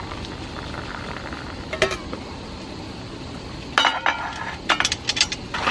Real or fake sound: real